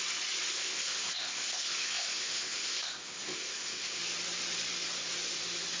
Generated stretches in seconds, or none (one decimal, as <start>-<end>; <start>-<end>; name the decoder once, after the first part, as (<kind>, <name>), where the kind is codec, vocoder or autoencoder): 0.5-4.0 (codec, ZipCodec)